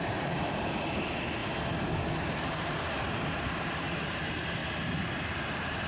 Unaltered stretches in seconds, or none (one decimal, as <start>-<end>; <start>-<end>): 1.4-2.2; 4.6-5.4